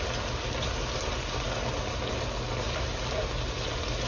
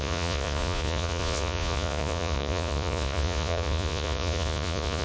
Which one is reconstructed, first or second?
second